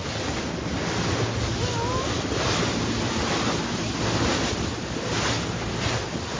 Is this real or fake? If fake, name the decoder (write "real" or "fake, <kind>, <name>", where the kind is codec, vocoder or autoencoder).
real